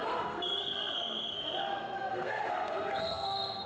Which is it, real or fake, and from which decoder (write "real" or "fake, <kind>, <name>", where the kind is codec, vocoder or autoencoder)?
fake, codec, SNAC